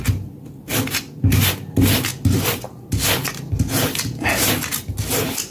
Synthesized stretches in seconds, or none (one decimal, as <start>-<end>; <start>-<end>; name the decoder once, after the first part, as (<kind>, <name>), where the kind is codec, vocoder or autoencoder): none